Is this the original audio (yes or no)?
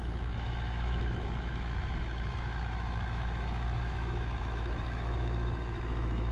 no